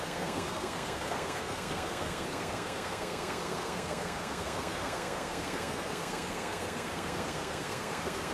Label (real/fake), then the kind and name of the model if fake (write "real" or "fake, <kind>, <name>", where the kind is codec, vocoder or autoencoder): fake, codec, SNAC